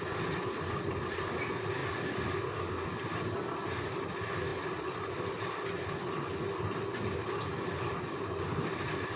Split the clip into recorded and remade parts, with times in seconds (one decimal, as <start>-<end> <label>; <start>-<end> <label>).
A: 0.0-9.2 recorded